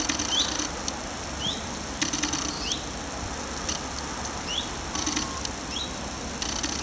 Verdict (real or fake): real